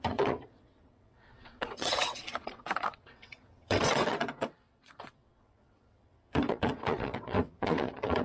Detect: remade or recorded remade